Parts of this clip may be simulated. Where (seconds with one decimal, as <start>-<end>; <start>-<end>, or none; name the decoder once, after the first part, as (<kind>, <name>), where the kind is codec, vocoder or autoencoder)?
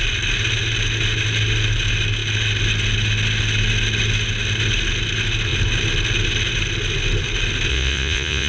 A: 7.7-8.5 (vocoder, Vocos)